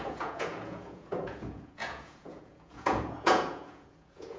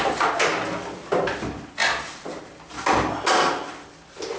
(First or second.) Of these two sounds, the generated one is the first